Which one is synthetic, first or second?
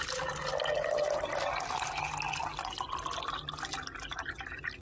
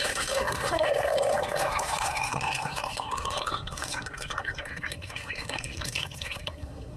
second